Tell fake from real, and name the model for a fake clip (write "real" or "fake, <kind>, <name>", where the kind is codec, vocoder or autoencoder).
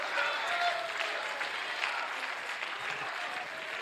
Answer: real